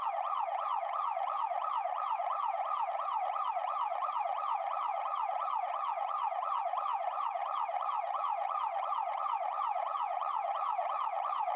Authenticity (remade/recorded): remade